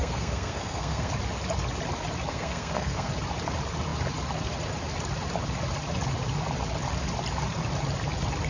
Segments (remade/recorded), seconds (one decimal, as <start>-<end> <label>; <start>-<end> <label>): 0.0-1.1 remade; 1.1-2.3 recorded; 2.3-3.1 remade; 3.1-8.5 recorded